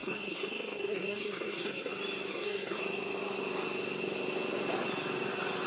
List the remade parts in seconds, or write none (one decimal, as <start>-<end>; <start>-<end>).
0.0-1.9; 2.3-2.8